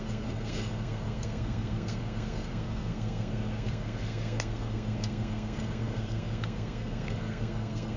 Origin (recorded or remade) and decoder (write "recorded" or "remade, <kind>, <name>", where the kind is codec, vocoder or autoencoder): remade, codec, SNAC